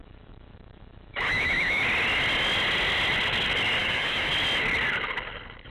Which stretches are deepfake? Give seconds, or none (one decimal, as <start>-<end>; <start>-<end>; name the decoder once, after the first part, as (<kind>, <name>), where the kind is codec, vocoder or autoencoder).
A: 0.0-1.8 (autoencoder, DAC-VAE); 3.8-4.3